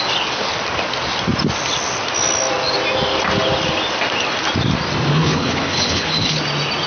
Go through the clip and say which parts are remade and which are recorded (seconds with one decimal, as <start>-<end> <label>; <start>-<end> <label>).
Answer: 0.0-5.1 recorded; 5.1-6.4 remade; 6.4-6.9 recorded